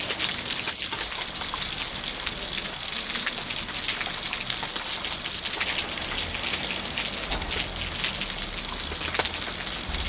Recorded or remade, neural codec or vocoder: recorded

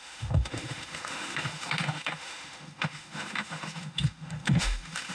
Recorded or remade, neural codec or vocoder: remade, autoencoder, DAC-VAE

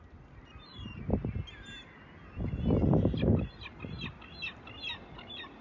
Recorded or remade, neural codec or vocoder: recorded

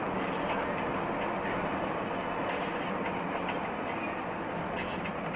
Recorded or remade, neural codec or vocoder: recorded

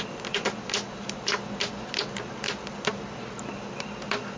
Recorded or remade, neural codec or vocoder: recorded